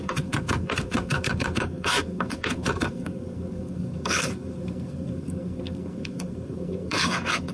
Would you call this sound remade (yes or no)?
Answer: yes